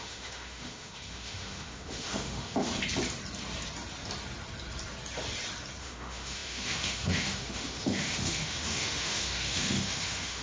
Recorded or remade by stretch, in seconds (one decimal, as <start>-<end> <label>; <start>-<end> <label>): 0.0-2.7 remade; 2.7-5.8 recorded; 5.8-10.4 remade